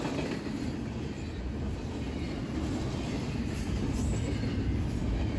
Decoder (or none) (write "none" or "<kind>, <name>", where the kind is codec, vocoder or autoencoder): none